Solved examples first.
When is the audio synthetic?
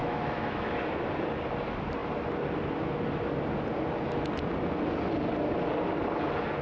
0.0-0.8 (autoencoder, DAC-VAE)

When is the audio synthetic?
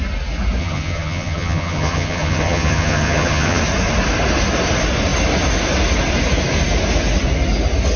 0.6-3.6 (vocoder, HiFi-GAN)